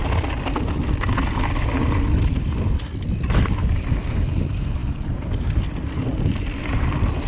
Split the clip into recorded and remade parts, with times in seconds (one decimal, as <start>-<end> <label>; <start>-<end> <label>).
0.0-7.3 recorded